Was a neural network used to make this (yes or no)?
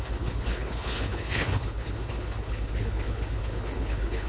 yes